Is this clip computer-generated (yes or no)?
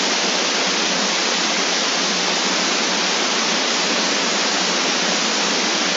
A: no